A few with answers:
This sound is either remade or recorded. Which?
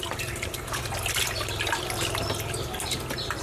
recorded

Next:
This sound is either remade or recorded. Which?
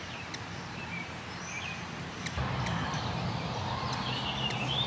remade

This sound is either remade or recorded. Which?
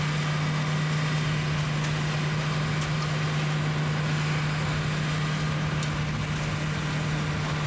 recorded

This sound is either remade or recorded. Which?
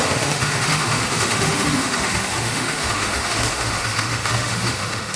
remade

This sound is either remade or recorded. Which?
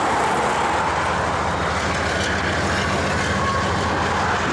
recorded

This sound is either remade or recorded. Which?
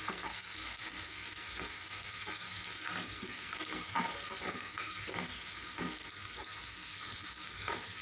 remade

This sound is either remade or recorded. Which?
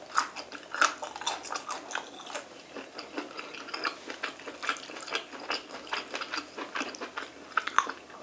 recorded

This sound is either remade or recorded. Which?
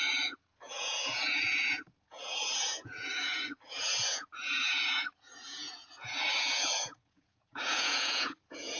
remade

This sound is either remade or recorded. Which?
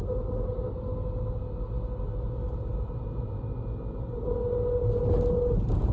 recorded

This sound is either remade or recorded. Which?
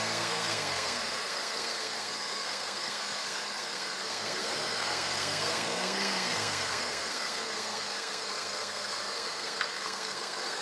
remade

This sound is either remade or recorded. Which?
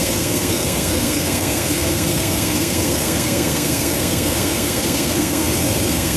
remade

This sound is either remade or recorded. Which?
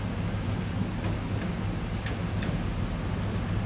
recorded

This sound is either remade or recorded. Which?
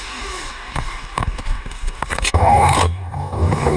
remade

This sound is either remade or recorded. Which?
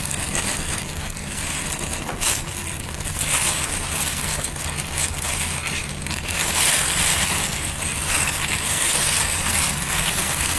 remade